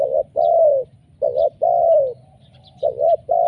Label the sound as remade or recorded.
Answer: recorded